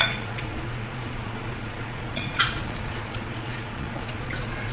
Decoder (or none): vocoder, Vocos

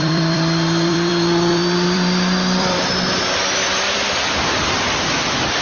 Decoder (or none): vocoder, BigVGAN v2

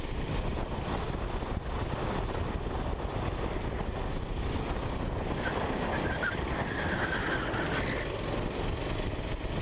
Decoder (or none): none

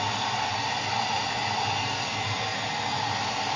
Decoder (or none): none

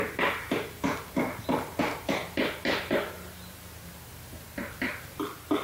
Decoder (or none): none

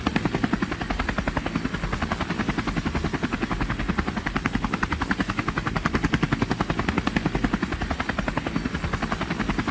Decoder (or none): none